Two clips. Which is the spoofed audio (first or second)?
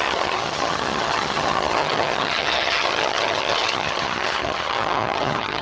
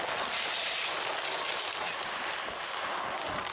first